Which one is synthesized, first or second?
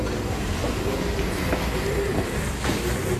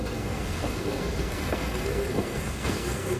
second